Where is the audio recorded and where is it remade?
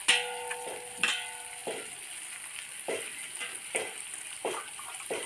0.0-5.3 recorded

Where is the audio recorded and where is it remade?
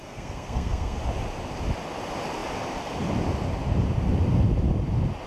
0.0-1.0 remade; 1.0-5.3 recorded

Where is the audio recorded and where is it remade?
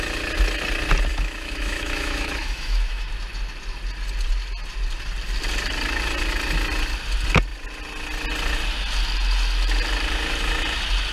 0.0-1.1 recorded; 1.1-3.1 remade; 3.1-11.1 recorded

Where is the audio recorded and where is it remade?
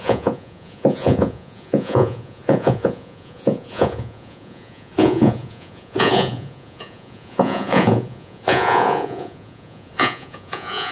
0.0-10.9 remade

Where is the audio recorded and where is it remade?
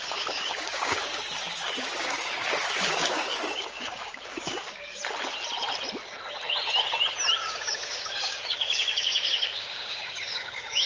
0.0-5.0 remade; 5.0-7.4 recorded; 7.4-10.9 remade